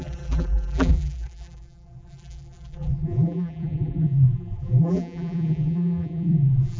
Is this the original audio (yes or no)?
no